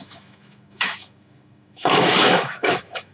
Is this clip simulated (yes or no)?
yes